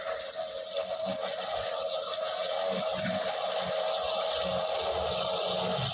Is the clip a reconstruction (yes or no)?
no